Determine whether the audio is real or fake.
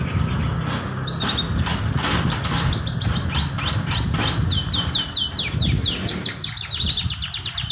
real